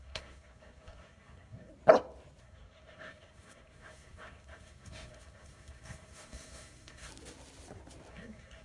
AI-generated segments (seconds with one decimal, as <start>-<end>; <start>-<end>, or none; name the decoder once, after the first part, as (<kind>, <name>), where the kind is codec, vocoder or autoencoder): 0.0-1.7 (codec, SNAC); 2.4-7.1; 8.1-8.6